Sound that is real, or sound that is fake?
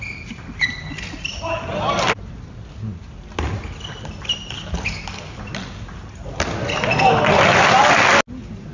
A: real